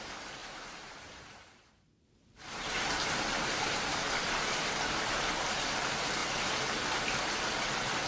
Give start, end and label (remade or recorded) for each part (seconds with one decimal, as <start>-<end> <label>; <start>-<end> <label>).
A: 0.0-0.4 recorded; 0.4-5.3 remade; 5.3-8.1 recorded